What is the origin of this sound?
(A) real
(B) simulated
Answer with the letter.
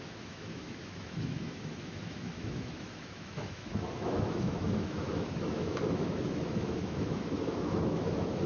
B